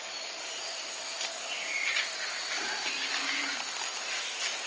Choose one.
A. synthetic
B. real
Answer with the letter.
B